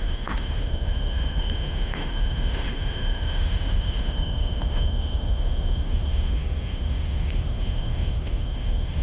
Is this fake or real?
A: fake